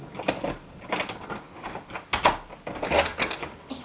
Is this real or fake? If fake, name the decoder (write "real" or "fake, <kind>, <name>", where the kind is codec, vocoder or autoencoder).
real